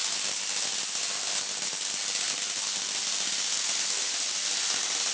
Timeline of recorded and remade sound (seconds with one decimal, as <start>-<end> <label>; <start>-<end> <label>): 0.0-5.1 recorded